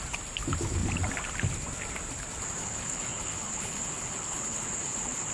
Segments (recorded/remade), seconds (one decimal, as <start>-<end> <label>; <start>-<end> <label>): 0.0-2.6 recorded; 2.6-5.3 remade